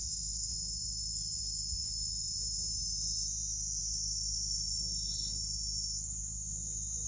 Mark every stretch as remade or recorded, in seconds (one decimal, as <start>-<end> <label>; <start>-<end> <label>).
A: 0.0-0.5 remade; 0.5-7.1 recorded